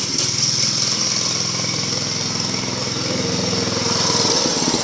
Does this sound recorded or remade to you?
recorded